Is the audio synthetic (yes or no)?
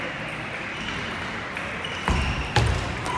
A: no